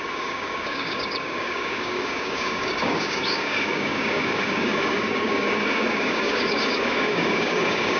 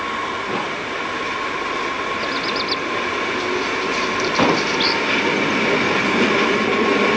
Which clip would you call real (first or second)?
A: second